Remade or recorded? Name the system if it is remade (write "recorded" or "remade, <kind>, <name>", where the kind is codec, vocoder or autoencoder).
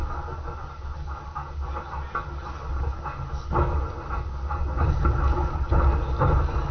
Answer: recorded